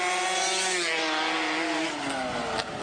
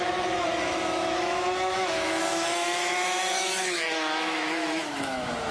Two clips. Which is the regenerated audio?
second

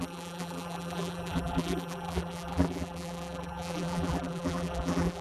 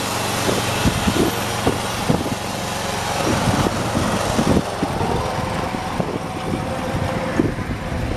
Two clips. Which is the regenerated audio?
first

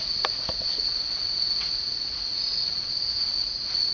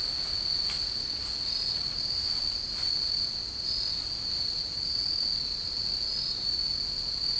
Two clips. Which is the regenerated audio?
first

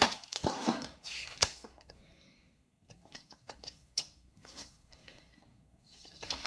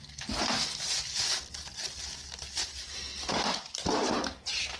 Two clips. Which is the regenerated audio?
first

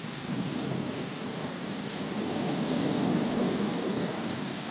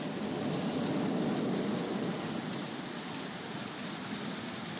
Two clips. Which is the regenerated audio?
first